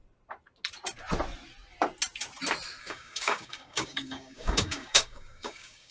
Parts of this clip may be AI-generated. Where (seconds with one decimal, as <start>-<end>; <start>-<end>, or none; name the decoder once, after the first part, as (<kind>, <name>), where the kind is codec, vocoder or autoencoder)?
2.8-5.9 (codec, DAC)